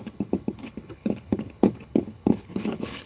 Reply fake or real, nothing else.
fake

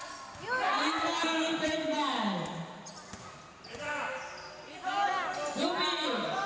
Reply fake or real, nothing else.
real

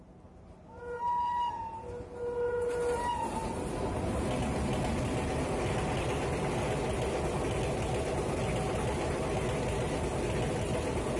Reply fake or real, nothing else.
real